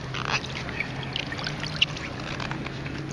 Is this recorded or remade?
recorded